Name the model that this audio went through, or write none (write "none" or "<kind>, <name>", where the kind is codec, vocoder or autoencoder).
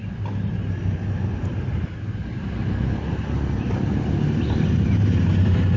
none